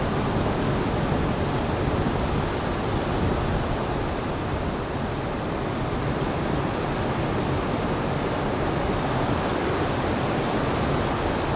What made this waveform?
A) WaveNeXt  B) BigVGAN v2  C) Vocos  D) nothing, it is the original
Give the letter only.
D